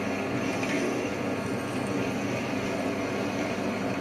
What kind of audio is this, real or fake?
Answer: real